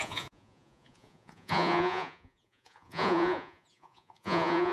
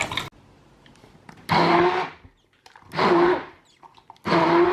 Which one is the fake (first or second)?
first